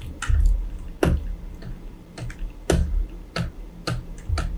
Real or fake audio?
real